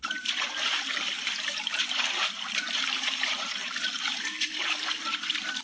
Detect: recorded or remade remade